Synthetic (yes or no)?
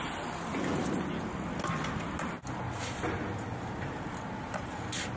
no